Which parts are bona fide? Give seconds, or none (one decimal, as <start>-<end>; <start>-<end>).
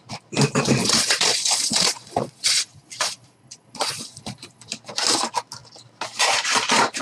0.0-0.8; 4.7-7.0